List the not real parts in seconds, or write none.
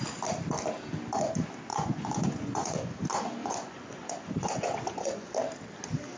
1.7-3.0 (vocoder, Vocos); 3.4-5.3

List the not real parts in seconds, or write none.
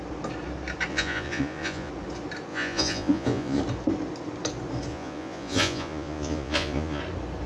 0.9-1.9 (vocoder, Vocos); 2.5-3.6; 4.9-7.0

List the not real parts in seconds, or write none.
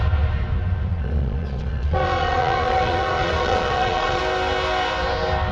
0.9-4.2 (vocoder, Vocos)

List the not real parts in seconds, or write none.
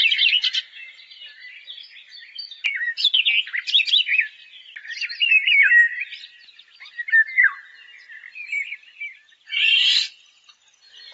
none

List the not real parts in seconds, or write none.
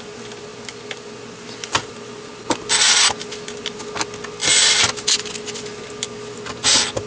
none